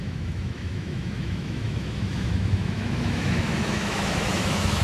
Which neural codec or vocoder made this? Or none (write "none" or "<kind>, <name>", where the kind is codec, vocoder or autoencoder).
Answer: autoencoder, DAC-VAE